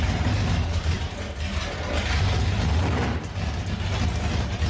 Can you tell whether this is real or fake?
real